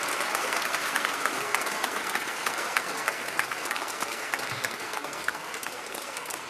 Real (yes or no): no